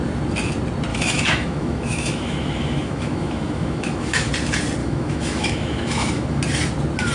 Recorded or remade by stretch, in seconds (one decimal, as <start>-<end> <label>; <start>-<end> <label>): 0.0-0.9 recorded; 0.9-4.3 remade; 4.3-4.8 recorded; 4.8-6.4 remade; 6.4-7.1 recorded